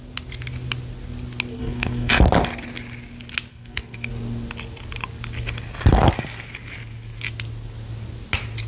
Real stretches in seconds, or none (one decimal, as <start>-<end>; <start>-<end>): 0.0-1.6; 2.2-3.5; 4.1-8.7